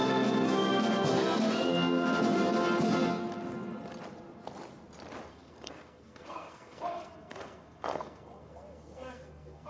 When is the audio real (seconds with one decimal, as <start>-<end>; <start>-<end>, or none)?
0.0-5.3